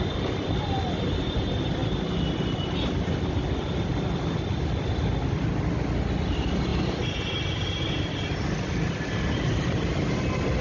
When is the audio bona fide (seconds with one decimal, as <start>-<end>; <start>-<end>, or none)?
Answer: 0.0-10.6